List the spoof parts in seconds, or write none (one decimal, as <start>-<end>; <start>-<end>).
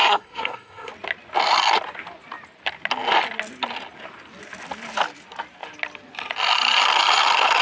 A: 0.0-0.9